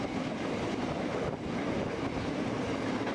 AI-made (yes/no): no